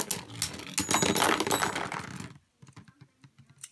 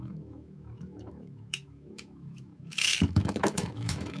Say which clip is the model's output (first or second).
second